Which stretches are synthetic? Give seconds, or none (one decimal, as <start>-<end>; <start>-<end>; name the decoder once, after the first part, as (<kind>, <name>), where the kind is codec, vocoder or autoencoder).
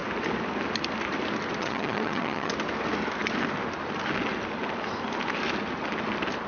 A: 1.6-2.5 (vocoder, HiFi-GAN)